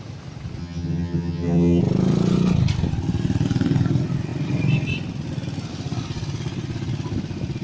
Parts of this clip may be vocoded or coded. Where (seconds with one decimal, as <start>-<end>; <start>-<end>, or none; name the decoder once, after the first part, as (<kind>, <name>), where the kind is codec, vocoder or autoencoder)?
0.6-1.8 (vocoder, HiFi-GAN)